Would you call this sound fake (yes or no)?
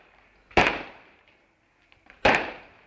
yes